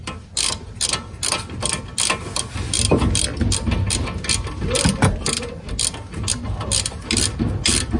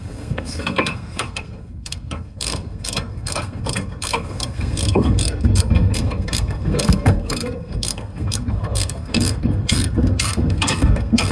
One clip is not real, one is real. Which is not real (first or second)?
second